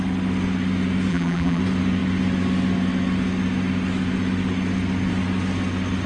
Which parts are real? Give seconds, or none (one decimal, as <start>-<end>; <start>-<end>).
0.0-1.1; 1.6-6.1